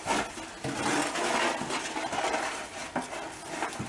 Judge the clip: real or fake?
real